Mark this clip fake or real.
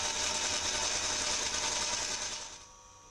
real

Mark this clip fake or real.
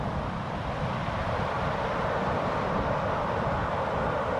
fake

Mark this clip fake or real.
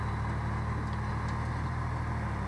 real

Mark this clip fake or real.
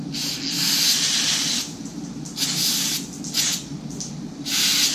real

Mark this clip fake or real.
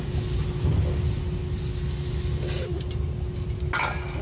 real